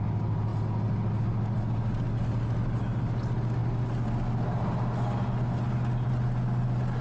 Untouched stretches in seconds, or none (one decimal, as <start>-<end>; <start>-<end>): 0.0-7.0

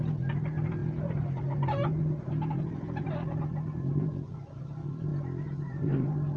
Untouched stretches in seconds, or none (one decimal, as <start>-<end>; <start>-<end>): 0.0-6.4

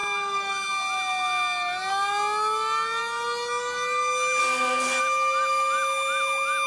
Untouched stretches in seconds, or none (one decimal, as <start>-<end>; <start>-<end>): 0.0-4.4; 5.0-6.7

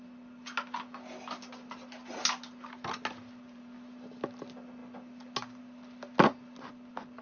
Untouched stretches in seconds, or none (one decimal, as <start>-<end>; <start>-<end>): 0.0-7.2

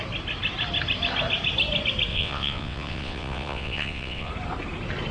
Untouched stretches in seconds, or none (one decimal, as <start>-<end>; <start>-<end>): 0.0-2.1; 4.3-5.1

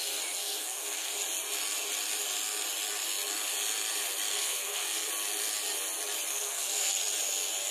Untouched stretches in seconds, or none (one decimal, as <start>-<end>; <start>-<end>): 0.0-0.4; 1.1-4.3; 5.1-6.3; 6.9-7.7